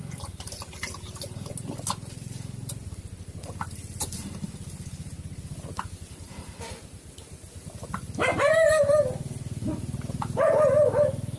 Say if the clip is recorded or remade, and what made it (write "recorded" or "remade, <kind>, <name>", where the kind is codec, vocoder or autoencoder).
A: recorded